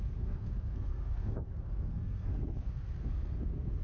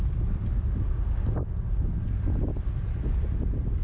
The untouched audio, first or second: second